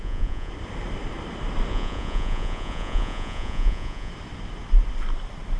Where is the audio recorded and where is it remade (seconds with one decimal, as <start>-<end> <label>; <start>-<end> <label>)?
0.0-0.5 remade; 0.5-1.7 recorded; 1.7-4.1 remade; 4.1-5.6 recorded